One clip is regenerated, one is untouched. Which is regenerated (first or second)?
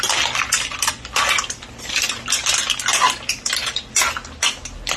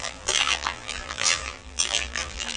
second